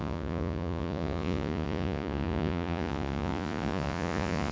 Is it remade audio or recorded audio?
remade